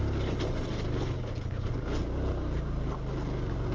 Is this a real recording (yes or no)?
yes